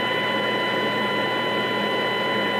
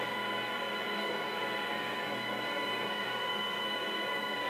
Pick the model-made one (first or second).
second